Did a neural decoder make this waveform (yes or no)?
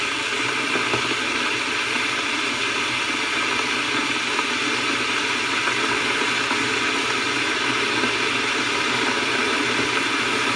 no